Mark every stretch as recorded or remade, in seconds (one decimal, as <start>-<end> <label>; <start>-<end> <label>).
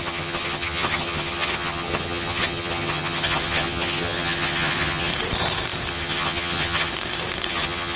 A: 0.0-5.1 remade; 5.1-5.9 recorded; 5.9-6.9 remade; 6.9-7.5 recorded; 7.5-8.0 remade